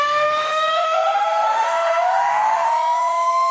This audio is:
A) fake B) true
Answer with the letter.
A